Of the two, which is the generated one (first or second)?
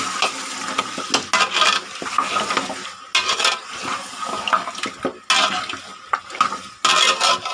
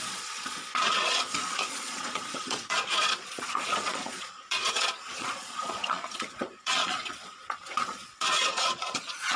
second